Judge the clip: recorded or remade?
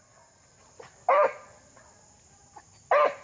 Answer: recorded